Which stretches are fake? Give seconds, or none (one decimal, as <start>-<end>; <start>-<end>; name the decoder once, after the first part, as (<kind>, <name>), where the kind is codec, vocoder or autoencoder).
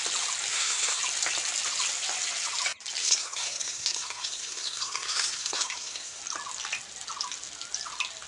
0.5-1.0 (codec, SNAC); 3.0-6.2